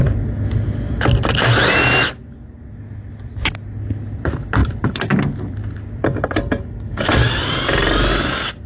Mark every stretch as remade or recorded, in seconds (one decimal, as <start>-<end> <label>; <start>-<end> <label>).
0.0-4.6 recorded; 4.6-7.6 remade; 7.6-8.7 recorded